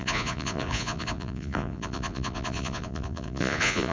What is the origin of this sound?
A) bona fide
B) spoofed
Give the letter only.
B